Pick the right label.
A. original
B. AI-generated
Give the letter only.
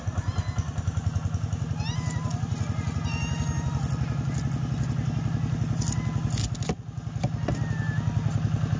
A